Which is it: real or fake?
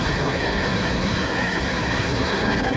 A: fake